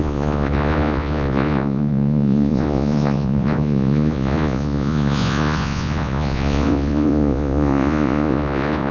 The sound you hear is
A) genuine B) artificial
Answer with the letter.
B